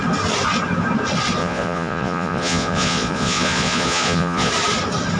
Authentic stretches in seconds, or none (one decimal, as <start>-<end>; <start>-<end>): 0.0-1.4; 4.5-5.2